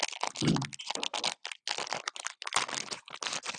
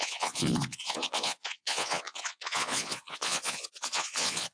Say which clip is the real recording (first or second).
first